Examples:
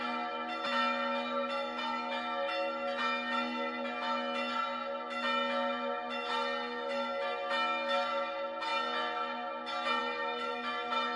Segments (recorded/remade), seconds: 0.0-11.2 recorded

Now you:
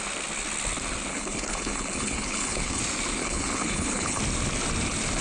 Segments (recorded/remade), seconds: 0.0-1.1 recorded; 1.1-2.8 remade; 2.8-3.2 recorded; 3.2-4.2 remade; 4.2-5.2 recorded

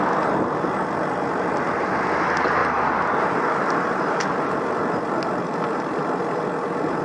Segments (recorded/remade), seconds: 0.0-7.0 recorded

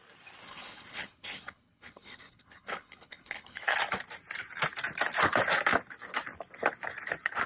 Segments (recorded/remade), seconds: 0.0-0.4 recorded; 0.4-3.6 remade; 3.6-7.5 recorded

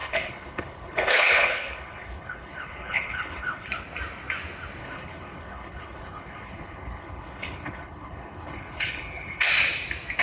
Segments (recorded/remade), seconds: 0.0-3.7 remade; 3.7-4.8 recorded; 4.8-9.5 remade; 9.5-10.2 recorded

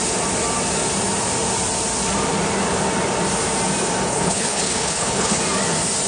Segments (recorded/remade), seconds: 0.0-4.1 recorded; 4.1-5.4 remade; 5.4-6.1 recorded

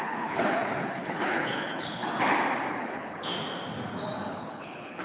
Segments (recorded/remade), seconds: 0.0-2.0 remade; 2.0-2.7 recorded; 2.7-3.3 remade; 3.3-4.3 recorded; 4.3-5.0 remade